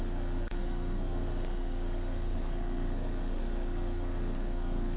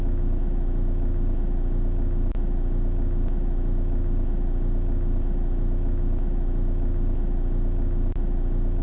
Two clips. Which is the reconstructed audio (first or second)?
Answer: first